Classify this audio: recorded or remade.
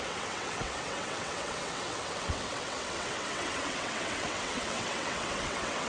remade